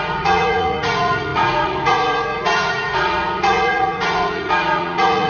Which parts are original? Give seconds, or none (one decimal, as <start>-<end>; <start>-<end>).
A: none